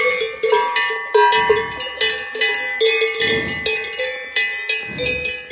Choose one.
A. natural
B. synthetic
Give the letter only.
A